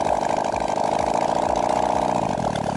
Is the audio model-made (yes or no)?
no